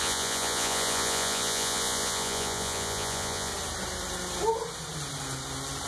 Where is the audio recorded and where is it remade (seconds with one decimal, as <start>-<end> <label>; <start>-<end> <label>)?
0.0-3.5 remade; 3.5-5.9 recorded